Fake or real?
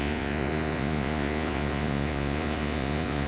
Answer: fake